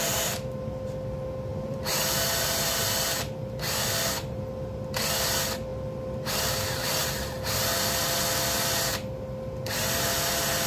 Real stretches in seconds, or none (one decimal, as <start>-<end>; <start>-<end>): 0.0-1.5; 2.7-10.7